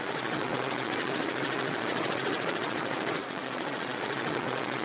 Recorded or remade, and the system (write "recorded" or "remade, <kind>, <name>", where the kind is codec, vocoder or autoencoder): remade, vocoder, Vocos